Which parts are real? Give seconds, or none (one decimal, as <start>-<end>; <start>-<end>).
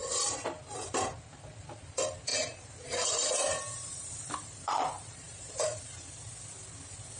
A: 0.0-2.3; 5.8-7.2